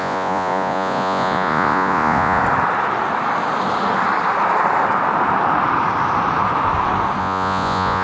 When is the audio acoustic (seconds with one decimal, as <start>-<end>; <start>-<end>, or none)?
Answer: 2.4-7.2